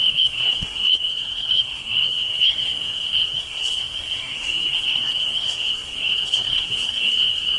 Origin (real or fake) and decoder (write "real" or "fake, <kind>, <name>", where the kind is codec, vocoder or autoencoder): fake, codec, SNAC